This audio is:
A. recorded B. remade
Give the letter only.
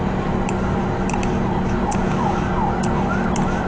A